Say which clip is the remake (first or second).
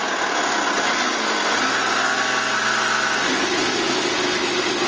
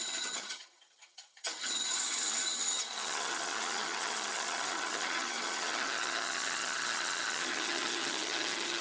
second